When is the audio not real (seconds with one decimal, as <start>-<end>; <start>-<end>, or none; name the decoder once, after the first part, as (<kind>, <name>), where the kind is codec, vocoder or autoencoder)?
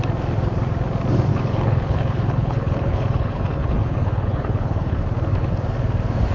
1.3-5.0 (codec, HILCodec)